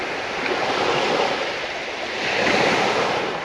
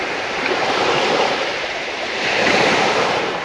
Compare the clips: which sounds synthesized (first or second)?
second